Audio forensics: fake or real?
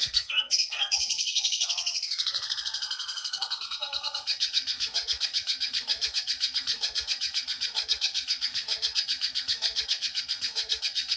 fake